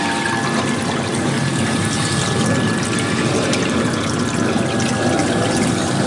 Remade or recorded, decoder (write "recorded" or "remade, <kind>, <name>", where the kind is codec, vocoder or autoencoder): remade, vocoder, BigVGAN v2